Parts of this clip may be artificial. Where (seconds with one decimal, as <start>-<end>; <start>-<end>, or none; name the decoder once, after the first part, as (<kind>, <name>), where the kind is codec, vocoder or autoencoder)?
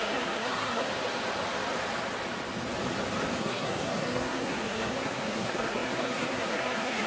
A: 0.0-0.9 (codec, SNAC); 3.4-7.1